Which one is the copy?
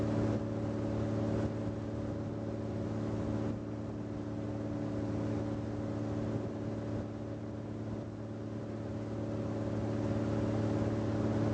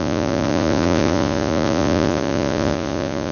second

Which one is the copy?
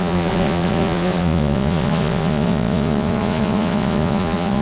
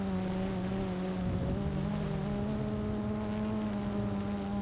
first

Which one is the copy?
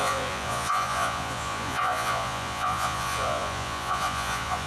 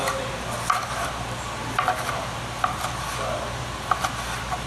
first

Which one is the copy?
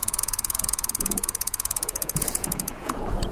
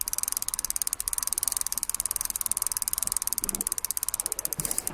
first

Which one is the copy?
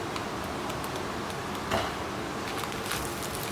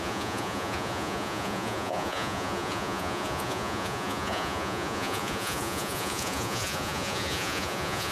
second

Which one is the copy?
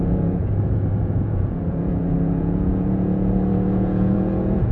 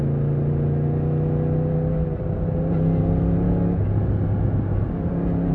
first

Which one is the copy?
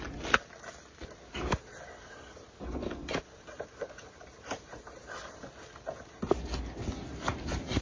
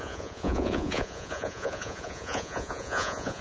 second